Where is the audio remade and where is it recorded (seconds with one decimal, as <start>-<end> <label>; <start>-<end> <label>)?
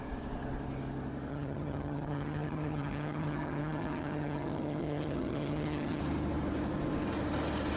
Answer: 0.0-1.3 recorded; 1.3-6.0 remade; 6.0-7.8 recorded